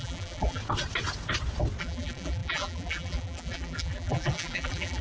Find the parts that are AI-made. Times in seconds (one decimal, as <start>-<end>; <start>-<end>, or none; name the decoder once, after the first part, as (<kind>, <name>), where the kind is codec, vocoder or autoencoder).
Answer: 0.0-0.6 (vocoder, BigVGAN v2); 1.8-5.0